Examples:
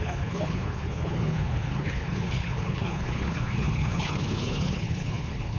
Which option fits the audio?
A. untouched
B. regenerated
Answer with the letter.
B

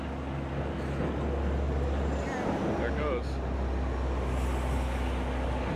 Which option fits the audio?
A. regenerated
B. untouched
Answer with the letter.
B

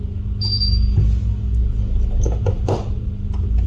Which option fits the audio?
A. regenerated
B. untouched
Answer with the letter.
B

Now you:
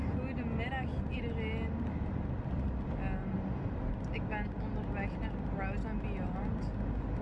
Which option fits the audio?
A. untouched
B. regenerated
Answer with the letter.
A